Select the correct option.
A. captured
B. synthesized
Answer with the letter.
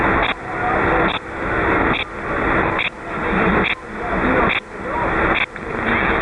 B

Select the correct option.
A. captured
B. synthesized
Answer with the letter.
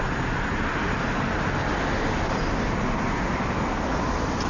A